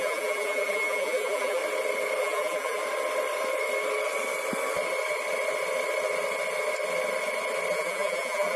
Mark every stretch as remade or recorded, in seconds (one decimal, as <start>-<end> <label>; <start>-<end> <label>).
0.0-1.6 remade; 1.6-2.2 recorded; 2.2-2.8 remade; 2.8-7.7 recorded; 7.7-8.6 remade